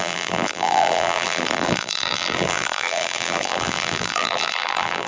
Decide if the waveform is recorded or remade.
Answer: remade